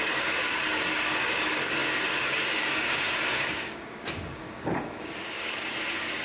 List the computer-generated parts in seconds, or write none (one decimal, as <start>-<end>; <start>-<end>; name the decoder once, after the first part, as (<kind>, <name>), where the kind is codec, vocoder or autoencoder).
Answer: 0.0-6.2 (codec, DAC)